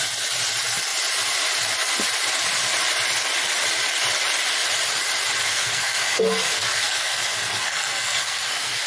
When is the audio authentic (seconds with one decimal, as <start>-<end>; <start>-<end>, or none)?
0.0-5.4